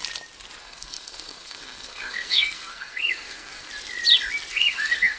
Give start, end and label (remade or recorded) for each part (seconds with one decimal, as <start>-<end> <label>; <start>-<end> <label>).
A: 0.0-0.6 recorded; 0.6-3.7 remade; 3.7-4.5 recorded; 4.5-5.2 remade